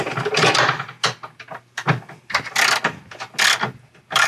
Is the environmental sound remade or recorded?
recorded